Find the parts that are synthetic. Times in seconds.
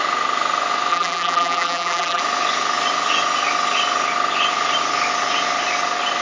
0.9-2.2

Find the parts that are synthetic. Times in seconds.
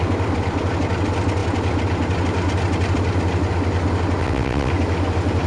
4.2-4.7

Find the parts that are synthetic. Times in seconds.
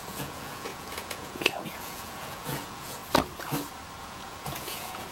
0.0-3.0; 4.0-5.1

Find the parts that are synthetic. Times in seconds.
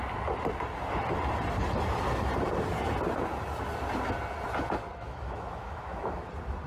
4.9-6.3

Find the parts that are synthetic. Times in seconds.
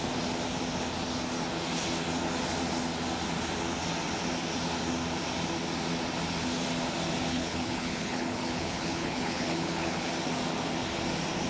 7.3-10.1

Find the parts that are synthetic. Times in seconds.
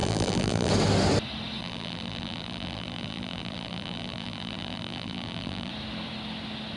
0.0-0.7; 1.6-5.7